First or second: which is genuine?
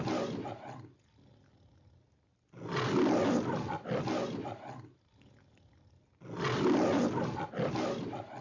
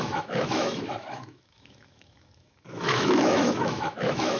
first